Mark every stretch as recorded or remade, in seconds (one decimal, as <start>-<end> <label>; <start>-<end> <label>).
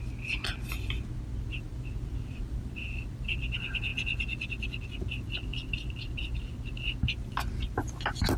0.0-1.7 recorded; 1.7-3.4 remade; 3.4-5.5 recorded; 5.5-6.7 remade; 6.7-8.4 recorded